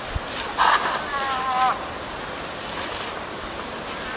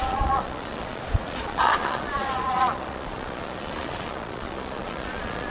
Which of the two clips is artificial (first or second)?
second